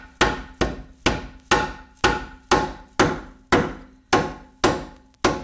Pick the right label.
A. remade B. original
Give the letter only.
B